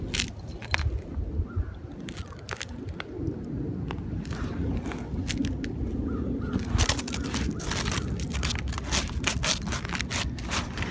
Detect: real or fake real